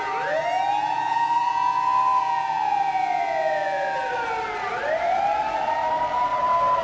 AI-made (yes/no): no